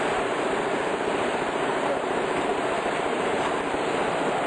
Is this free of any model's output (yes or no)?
yes